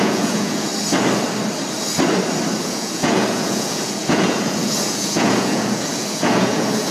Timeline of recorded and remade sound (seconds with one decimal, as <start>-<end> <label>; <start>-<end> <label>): 0.0-0.7 remade; 0.7-2.6 recorded; 2.6-6.9 remade